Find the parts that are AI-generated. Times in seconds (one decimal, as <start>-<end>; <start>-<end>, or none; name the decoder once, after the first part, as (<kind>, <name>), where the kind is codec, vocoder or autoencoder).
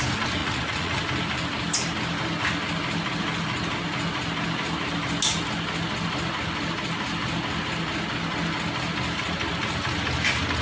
0.4-1.0 (vocoder, Vocos)